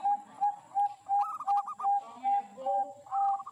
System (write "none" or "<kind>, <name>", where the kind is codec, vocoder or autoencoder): none